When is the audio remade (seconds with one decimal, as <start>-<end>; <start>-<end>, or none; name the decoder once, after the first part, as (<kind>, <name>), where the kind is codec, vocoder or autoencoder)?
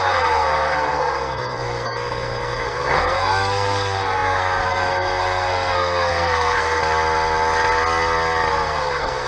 0.0-6.8 (codec, SNAC); 8.5-9.3